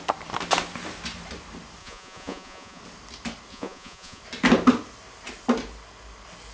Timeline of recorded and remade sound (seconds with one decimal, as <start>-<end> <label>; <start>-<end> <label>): 0.0-1.8 recorded; 1.8-2.8 remade; 2.8-3.5 recorded; 3.5-4.2 remade; 4.2-6.5 recorded